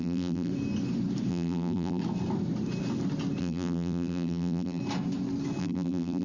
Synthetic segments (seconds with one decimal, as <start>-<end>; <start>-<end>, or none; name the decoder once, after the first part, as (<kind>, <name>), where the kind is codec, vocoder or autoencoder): 0.0-0.5 (vocoder, BigVGAN v2); 1.3-2.0; 3.4-4.8; 5.6-6.2